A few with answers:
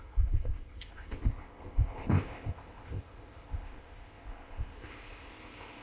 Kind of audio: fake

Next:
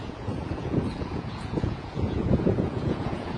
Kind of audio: fake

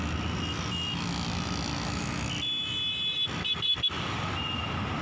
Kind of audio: real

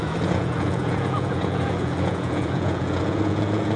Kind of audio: fake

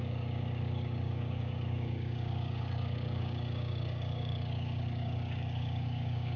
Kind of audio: fake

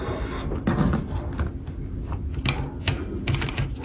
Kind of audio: real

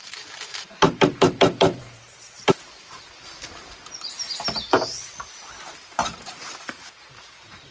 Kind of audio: fake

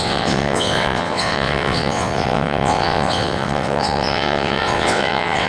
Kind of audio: fake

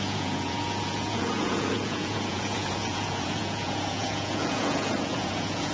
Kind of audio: fake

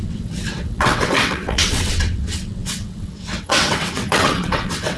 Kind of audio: fake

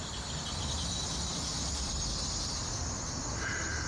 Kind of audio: real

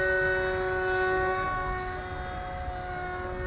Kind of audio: real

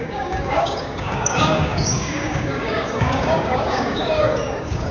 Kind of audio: fake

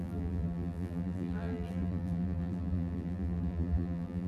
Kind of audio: fake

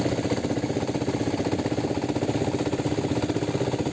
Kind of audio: real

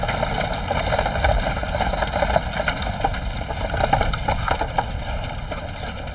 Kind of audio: real